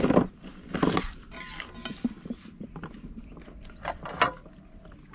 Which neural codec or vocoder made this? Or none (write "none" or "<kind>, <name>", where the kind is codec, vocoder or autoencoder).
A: none